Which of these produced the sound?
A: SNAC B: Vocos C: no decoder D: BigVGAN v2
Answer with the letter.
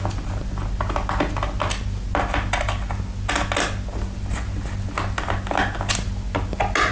C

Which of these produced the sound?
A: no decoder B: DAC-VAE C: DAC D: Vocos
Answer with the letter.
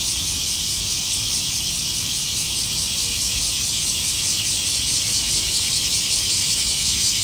C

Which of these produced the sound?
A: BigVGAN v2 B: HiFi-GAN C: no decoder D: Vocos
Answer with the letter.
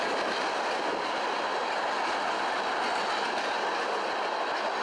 C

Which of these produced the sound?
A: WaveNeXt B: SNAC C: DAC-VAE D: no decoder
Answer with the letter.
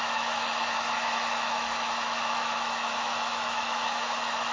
C